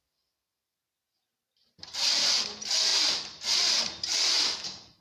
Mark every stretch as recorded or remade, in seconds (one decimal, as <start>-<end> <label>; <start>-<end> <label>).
0.0-2.9 recorded; 2.9-3.6 remade; 3.6-5.0 recorded